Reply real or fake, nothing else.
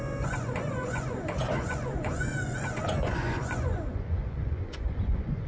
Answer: fake